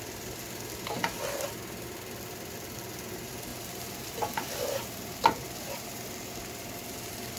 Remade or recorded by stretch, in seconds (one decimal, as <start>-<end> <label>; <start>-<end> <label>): 0.0-3.5 recorded; 3.5-5.9 remade; 5.9-7.4 recorded

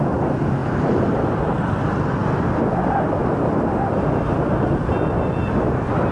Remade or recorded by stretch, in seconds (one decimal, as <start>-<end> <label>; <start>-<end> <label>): 0.0-6.1 recorded

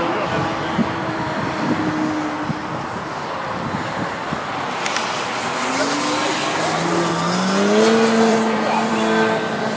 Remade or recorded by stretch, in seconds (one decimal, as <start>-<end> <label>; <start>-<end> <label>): 0.0-0.8 recorded; 0.8-1.5 remade; 1.5-2.6 recorded; 2.6-4.8 remade; 4.8-6.4 recorded; 6.4-7.1 remade; 7.1-8.3 recorded; 8.3-8.9 remade; 8.9-9.8 recorded

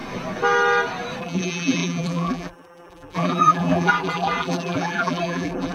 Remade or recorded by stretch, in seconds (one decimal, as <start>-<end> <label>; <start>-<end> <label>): 0.0-1.2 recorded; 1.2-5.7 remade

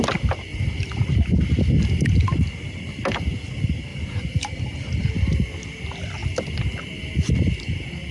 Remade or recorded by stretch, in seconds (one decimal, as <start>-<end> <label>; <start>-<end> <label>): 0.0-0.5 recorded; 0.5-1.1 remade; 1.1-3.9 recorded; 3.9-5.1 remade; 5.1-8.1 recorded